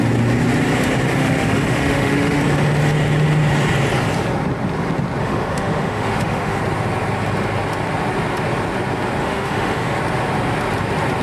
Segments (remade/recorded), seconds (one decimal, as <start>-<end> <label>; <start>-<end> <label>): 0.0-1.2 recorded; 1.2-2.4 remade; 2.4-5.2 recorded; 5.2-6.6 remade; 6.6-9.2 recorded; 9.2-10.0 remade; 10.0-11.2 recorded

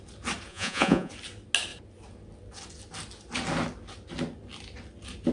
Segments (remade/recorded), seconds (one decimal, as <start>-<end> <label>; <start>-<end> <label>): 0.0-0.5 recorded; 0.5-1.1 remade; 1.1-5.3 recorded